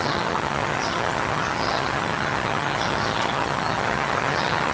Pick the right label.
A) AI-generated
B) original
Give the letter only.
A